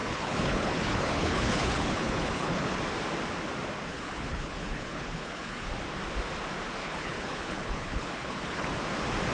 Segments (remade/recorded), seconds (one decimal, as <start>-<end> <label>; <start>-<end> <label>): 0.0-2.8 remade; 2.8-3.9 recorded; 3.9-5.7 remade; 5.7-6.8 recorded; 6.8-8.7 remade; 8.7-9.3 recorded